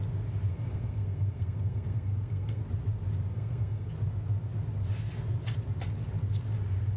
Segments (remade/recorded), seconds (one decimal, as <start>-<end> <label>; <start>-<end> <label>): 0.0-0.5 recorded; 0.5-2.6 remade; 2.6-3.3 recorded; 3.3-3.9 remade; 3.9-7.0 recorded